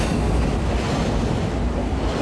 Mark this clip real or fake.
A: real